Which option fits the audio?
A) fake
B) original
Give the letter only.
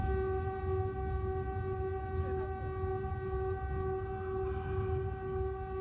B